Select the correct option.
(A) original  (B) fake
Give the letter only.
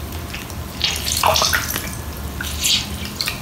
A